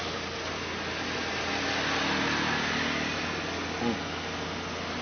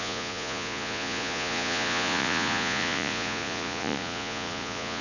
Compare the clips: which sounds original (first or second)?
first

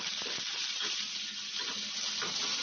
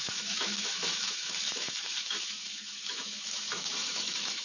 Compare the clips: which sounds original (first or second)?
first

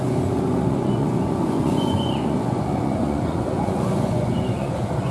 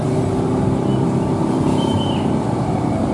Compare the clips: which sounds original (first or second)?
second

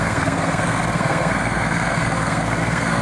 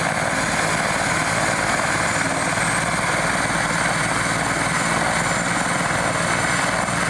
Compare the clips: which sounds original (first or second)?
second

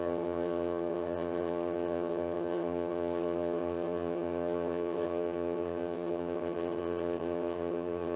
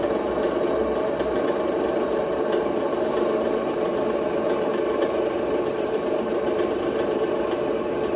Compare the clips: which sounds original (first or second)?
second